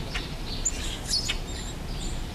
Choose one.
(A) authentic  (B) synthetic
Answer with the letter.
A